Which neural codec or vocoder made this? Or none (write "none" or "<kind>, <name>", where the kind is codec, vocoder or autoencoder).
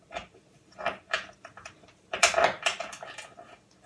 vocoder, BigVGAN v2